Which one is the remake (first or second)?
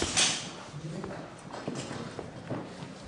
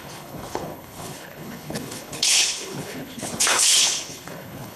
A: second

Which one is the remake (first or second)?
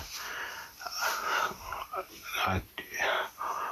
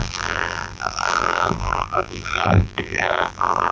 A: second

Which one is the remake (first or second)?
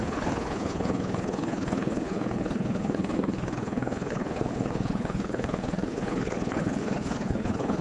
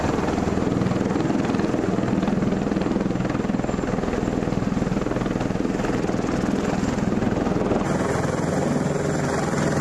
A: first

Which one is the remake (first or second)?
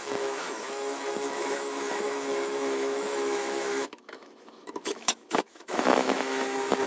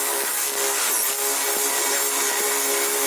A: first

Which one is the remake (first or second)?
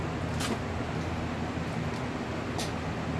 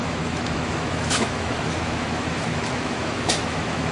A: second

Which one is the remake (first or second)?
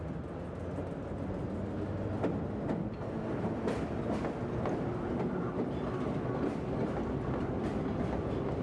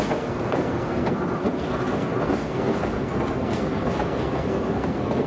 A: second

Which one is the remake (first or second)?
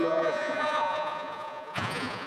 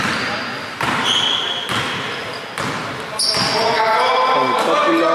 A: first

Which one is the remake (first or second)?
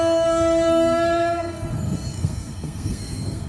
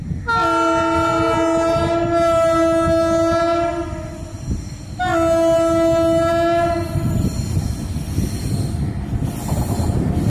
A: first